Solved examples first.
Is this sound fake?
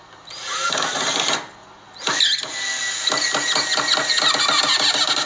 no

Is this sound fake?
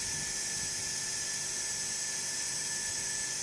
no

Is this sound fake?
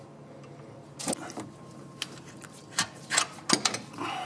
no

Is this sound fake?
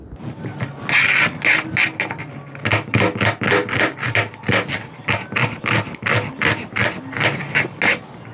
no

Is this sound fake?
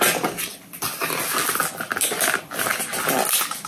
no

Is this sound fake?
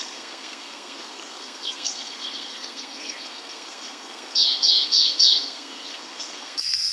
yes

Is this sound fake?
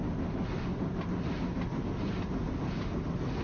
no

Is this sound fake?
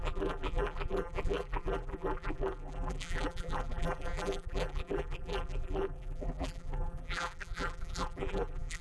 yes